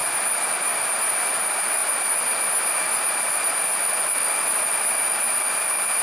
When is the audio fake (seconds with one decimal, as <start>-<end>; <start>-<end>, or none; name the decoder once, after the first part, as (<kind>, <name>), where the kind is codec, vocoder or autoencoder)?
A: none